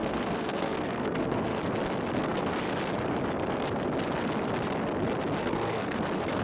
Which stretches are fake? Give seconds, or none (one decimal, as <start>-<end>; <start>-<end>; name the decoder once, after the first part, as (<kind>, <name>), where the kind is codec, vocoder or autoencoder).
0.0-1.6 (codec, SNAC); 5.4-6.0